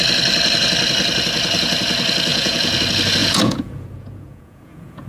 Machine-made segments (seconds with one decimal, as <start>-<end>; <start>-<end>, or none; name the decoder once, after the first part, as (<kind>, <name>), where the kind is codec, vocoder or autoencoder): 2.3-2.8 (vocoder, Vocos); 3.2-5.1